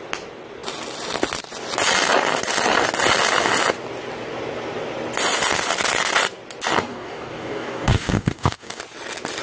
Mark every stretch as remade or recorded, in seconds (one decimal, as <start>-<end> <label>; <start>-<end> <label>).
0.0-6.9 recorded; 6.9-8.8 remade; 8.8-9.4 recorded